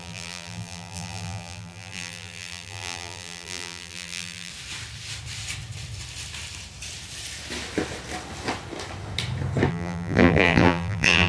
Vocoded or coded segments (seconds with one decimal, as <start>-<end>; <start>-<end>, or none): 0.0-4.5; 9.7-11.3